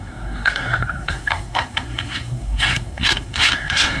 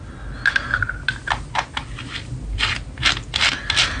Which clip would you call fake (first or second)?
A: first